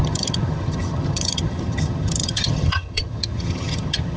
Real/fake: fake